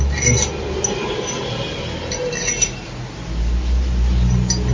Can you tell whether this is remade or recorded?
recorded